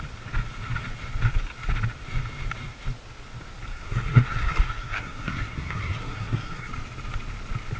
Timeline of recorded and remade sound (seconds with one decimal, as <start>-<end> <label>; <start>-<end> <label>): 0.0-3.7 recorded; 3.7-6.7 remade; 6.7-7.8 recorded